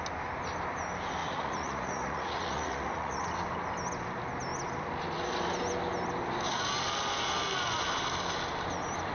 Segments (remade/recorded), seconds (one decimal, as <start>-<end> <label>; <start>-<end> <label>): 0.0-1.2 recorded; 1.2-3.2 remade; 3.2-9.1 recorded

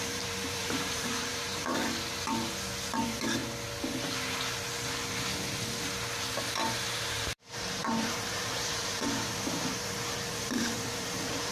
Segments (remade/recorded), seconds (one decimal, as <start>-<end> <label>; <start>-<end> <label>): 0.0-1.7 remade; 1.7-3.0 recorded; 3.0-3.4 remade; 3.4-6.8 recorded; 6.8-11.5 remade

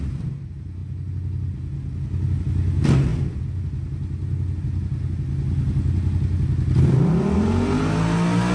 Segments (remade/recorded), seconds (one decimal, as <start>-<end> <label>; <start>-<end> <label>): 0.0-8.5 recorded

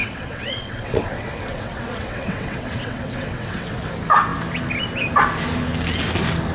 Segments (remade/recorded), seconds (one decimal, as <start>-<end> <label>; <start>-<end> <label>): 0.0-3.9 remade; 3.9-6.5 recorded